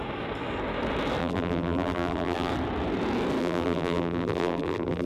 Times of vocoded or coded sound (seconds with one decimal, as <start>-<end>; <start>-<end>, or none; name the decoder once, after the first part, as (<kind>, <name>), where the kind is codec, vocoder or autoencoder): 1.2-2.5 (vocoder, BigVGAN v2); 3.4-5.1